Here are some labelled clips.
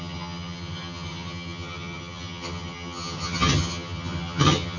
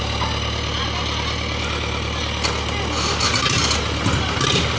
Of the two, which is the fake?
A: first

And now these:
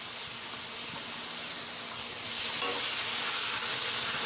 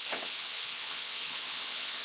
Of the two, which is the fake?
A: second